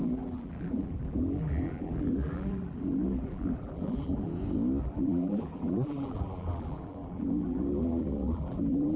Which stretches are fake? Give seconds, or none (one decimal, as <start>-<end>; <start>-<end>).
0.0-4.3; 4.8-9.0